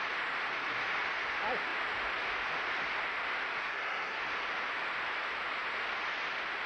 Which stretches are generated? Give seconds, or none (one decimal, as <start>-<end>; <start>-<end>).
3.6-4.2